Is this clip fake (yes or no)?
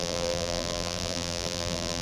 yes